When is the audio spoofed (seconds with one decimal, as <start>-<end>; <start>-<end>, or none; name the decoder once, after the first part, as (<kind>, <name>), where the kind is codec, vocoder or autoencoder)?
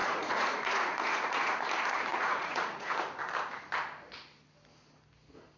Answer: 0.0-1.5 (vocoder, Vocos); 2.1-2.9